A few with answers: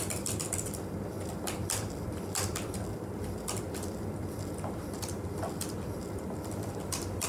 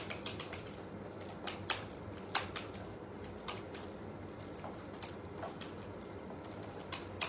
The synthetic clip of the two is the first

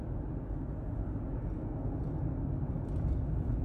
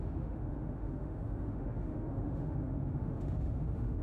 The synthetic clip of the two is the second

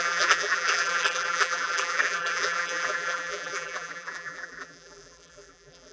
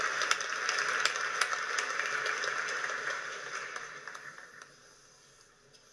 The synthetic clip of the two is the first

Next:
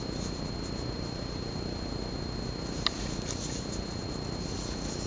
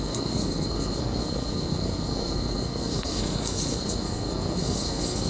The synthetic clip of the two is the second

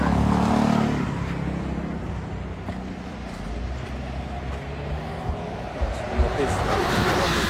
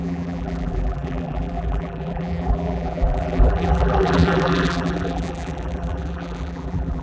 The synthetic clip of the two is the second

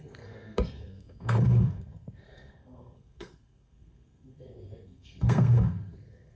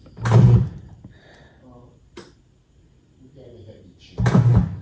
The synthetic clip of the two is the first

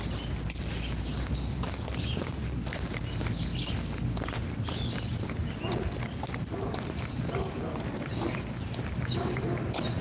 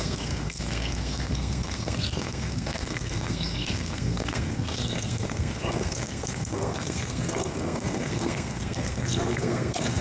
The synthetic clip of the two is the second